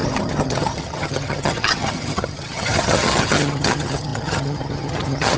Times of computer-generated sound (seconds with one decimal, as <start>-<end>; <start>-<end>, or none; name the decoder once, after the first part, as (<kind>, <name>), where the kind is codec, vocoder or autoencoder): 0.0-5.4 (vocoder, HiFi-GAN)